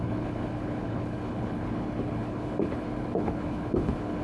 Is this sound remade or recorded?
remade